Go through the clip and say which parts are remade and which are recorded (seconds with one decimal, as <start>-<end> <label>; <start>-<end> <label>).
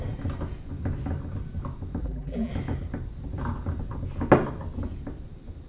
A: 0.0-2.0 recorded; 2.0-2.5 remade; 2.5-5.7 recorded